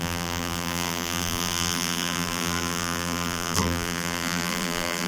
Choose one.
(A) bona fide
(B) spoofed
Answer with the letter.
B